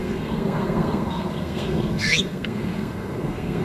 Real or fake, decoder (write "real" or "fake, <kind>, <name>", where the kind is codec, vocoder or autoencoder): fake, codec, SNAC